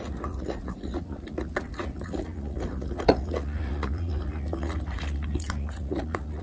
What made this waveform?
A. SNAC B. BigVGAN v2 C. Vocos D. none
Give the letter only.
C